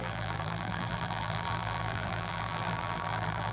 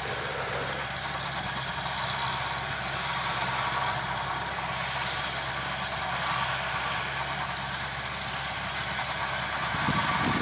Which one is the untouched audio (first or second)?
second